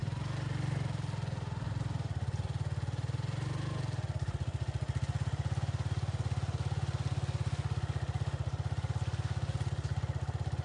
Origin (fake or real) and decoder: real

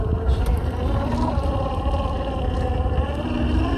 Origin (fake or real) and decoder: real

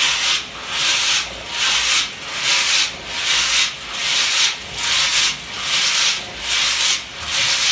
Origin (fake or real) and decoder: real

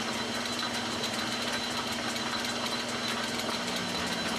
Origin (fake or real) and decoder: real